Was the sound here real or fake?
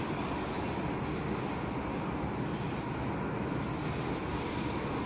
real